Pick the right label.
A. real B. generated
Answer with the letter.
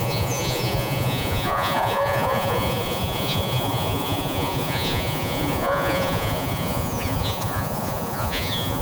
B